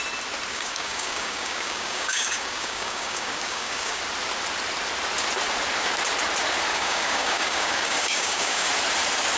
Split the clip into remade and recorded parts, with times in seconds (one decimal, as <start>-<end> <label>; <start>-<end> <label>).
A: 0.0-0.5 recorded; 0.5-4.0 remade; 4.0-6.7 recorded; 6.7-8.7 remade; 8.7-9.4 recorded